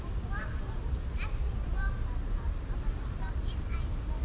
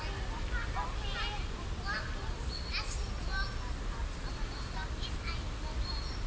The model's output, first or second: first